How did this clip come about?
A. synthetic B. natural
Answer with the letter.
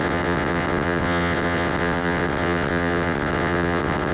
A